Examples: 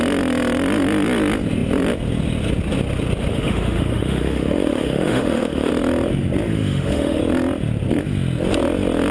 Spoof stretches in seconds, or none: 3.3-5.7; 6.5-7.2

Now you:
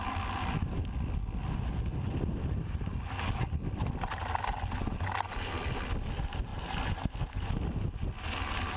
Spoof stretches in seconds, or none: none

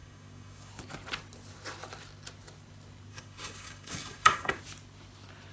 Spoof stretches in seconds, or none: 0.0-0.7; 3.1-4.6

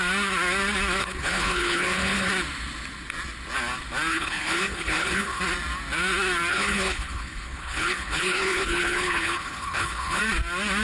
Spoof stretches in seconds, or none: 1.0-2.3; 4.1-5.4; 6.5-10.2

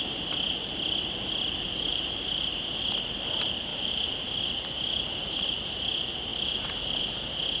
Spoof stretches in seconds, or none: 1.9-2.6; 3.7-4.3; 5.1-5.8; 6.3-7.0

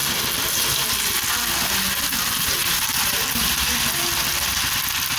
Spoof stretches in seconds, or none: 2.6-3.8

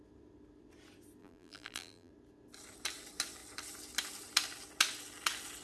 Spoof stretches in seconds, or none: 1.2-2.1